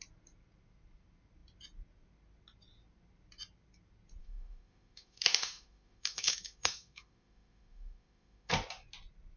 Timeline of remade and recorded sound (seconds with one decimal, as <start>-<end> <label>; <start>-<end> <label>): 0.0-4.2 recorded; 4.2-8.5 remade; 8.5-9.4 recorded